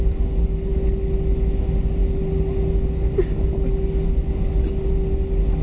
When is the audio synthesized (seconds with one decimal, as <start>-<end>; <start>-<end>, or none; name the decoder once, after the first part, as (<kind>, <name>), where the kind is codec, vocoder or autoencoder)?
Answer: none